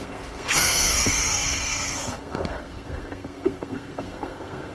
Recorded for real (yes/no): no